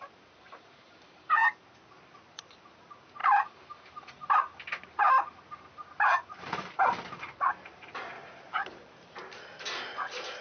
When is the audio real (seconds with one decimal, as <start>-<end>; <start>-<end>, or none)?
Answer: 1.4-2.1; 5.0-6.0